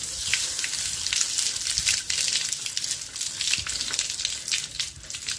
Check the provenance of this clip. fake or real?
real